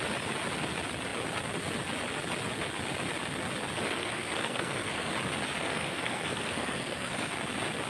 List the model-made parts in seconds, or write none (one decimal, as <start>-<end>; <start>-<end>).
4.0-5.1; 5.6-7.3